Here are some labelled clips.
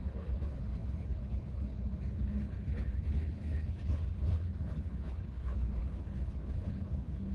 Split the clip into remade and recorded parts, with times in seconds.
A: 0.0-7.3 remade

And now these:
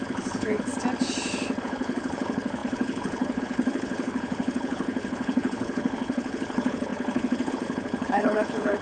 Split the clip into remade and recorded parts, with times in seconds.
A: 0.0-0.7 remade; 0.7-1.6 recorded; 1.6-8.8 remade

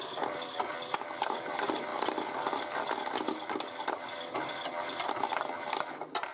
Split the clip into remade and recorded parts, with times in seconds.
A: 0.0-6.3 recorded

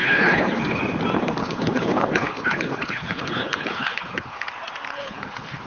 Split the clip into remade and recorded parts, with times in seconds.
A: 0.0-0.8 remade; 0.8-1.4 recorded; 1.4-4.5 remade; 4.5-4.9 recorded; 4.9-5.7 remade

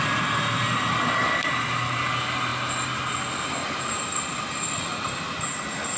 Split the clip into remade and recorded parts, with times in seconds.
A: 0.0-6.0 recorded

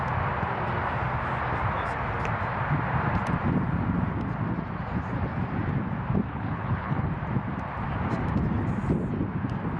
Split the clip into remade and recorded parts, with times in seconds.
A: 0.0-6.3 recorded; 6.3-7.1 remade; 7.1-9.8 recorded